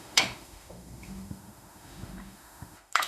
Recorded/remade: remade